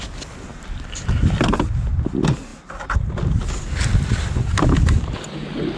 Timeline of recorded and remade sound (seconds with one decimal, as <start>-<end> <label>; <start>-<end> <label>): 0.0-5.8 recorded

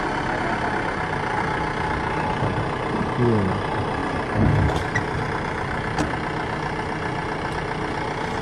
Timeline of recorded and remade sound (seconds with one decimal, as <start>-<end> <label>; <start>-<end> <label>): 0.0-8.4 recorded

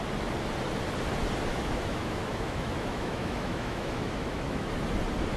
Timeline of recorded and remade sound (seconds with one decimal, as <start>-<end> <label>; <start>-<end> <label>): 0.0-1.5 recorded; 1.5-4.7 remade; 4.7-5.4 recorded

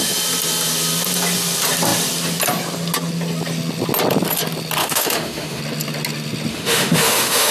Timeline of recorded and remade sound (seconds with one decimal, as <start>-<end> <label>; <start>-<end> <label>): 0.0-4.8 recorded; 4.8-5.6 remade; 5.6-6.5 recorded; 6.5-7.5 remade